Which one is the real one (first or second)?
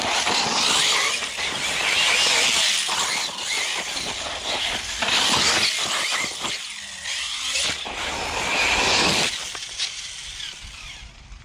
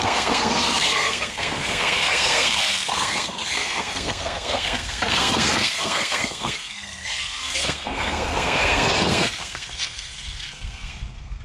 first